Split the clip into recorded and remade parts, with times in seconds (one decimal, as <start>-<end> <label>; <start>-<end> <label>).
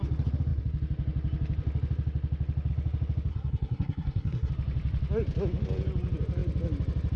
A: 0.0-3.3 recorded; 3.3-4.5 remade; 4.5-7.2 recorded